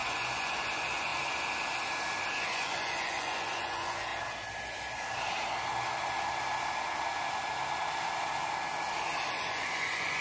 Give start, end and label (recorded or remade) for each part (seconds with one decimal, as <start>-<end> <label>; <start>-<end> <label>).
0.0-1.1 remade; 1.1-2.3 recorded; 2.3-4.1 remade; 4.1-9.3 recorded; 9.3-10.2 remade

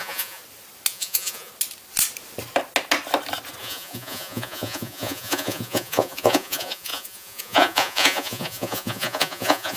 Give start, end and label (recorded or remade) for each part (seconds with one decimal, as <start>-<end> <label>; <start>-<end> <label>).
0.0-0.4 remade; 0.4-0.9 recorded; 0.9-1.5 remade; 1.5-3.6 recorded; 3.6-9.8 remade

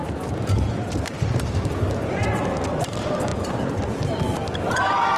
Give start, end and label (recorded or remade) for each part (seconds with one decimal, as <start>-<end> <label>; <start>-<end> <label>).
0.0-0.9 remade; 0.9-5.2 recorded

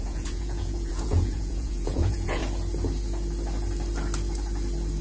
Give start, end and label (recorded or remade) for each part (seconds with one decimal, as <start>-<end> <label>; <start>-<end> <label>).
0.0-2.4 remade; 2.4-5.0 recorded

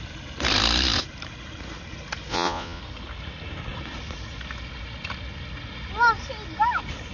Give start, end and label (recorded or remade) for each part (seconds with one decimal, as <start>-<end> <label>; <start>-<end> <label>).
0.0-2.3 recorded; 2.3-2.8 remade; 2.8-7.1 recorded

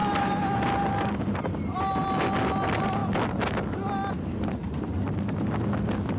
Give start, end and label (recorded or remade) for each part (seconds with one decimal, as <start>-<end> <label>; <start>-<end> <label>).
0.0-6.2 recorded

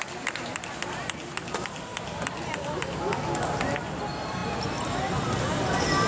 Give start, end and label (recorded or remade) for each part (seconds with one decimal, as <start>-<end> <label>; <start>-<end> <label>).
0.0-6.1 recorded